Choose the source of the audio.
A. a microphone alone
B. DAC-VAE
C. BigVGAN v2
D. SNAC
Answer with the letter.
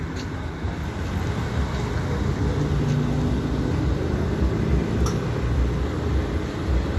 A